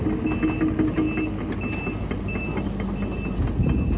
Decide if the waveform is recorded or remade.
recorded